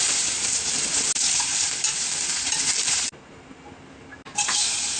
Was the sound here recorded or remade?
recorded